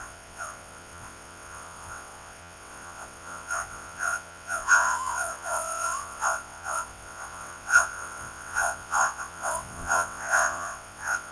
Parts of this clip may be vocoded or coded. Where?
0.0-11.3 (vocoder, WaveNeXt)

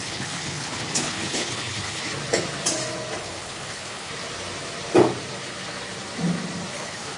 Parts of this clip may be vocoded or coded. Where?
0.0-2.0 (codec, HILCodec); 3.2-4.1; 6.7-7.2

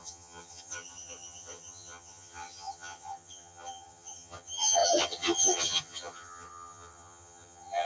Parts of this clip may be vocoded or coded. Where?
0.0-7.9 (vocoder, HiFi-GAN)